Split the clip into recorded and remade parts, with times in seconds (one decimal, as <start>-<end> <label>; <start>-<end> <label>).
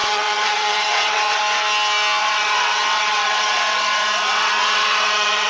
0.0-1.4 remade; 1.4-2.2 recorded; 2.2-5.5 remade